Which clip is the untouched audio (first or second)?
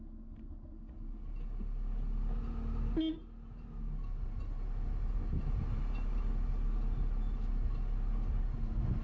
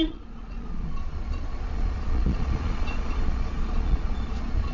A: first